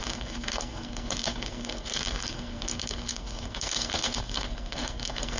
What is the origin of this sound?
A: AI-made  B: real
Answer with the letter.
A